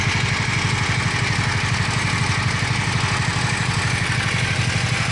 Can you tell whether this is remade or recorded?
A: recorded